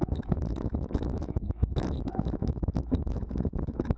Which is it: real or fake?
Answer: fake